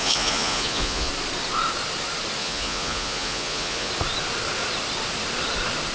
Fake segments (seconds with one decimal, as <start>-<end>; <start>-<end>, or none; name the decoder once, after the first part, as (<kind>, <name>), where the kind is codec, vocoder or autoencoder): 0.0-1.1 (vocoder, Vocos); 2.4-3.9

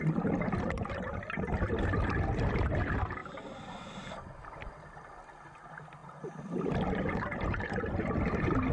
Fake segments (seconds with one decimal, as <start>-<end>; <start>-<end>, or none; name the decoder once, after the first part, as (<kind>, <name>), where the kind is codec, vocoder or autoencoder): none